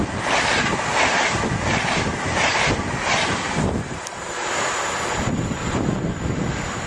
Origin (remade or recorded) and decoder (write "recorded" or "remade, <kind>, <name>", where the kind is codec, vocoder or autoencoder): recorded